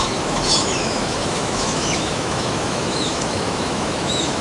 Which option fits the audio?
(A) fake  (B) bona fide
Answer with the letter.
A